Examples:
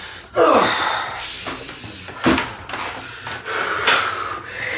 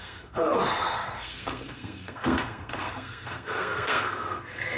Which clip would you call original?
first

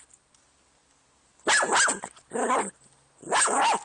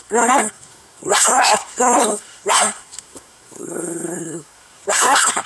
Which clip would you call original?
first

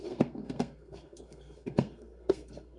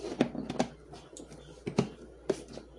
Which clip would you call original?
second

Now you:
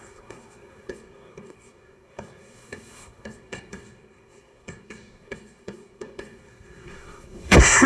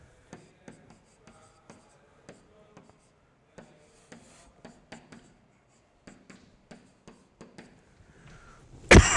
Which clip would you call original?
second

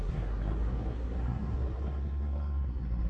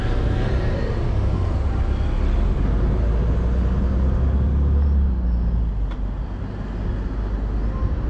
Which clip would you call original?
second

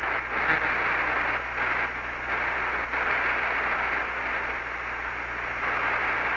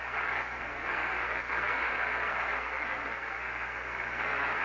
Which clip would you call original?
first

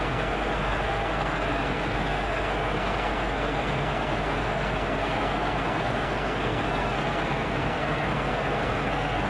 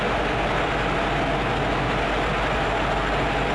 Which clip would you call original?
second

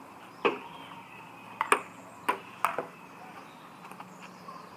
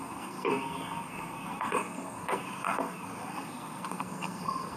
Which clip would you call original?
first